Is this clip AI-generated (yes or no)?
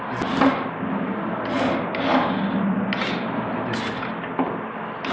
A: no